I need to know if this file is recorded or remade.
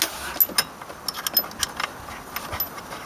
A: recorded